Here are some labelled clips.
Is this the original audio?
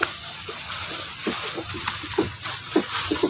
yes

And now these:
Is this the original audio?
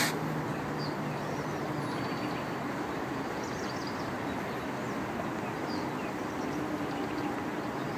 yes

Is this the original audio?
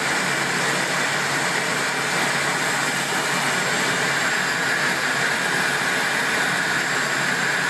yes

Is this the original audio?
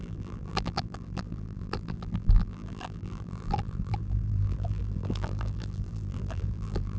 no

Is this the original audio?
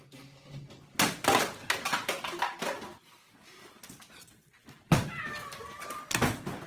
yes